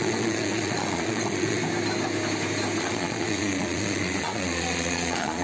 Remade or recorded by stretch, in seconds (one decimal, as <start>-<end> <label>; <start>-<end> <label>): 0.0-1.6 remade; 1.6-2.8 recorded; 2.8-5.4 remade